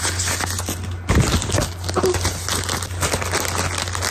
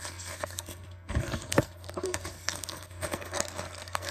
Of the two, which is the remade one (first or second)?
second